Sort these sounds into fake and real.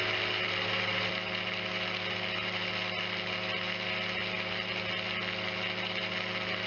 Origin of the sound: real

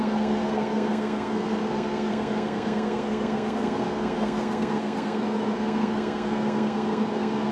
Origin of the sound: fake